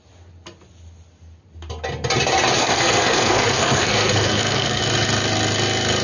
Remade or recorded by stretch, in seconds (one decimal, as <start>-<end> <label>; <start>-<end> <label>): 0.0-2.6 recorded; 2.6-4.8 remade; 4.8-6.0 recorded